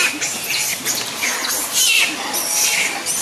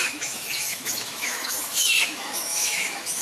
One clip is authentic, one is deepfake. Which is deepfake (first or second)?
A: second